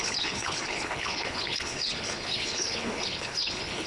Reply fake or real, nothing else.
fake